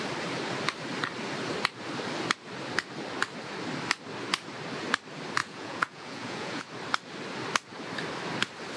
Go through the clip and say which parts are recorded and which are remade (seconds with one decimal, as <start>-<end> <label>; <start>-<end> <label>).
0.0-5.4 recorded; 5.4-6.6 remade; 6.6-8.8 recorded